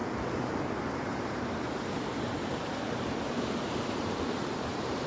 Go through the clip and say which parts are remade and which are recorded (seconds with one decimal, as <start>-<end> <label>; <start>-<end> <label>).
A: 0.0-0.6 recorded; 0.6-5.1 remade